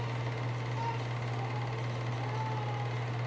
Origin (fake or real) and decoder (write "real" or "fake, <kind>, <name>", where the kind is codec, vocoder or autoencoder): real